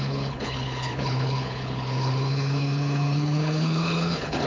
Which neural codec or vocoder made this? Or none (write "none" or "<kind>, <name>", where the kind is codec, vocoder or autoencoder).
codec, HILCodec